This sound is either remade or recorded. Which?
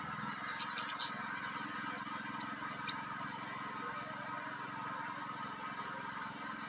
recorded